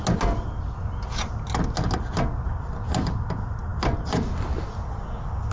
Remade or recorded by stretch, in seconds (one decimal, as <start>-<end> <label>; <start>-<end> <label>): 0.0-5.5 recorded